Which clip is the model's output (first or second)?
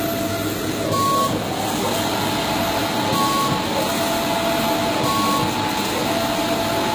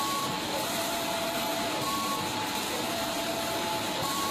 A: second